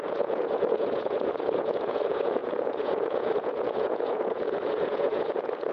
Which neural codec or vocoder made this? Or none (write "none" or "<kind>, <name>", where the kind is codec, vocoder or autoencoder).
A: vocoder, Vocos